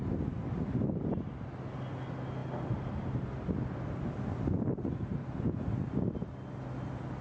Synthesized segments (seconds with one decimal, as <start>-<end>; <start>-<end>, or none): none